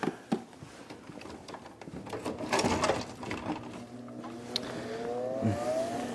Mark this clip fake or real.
real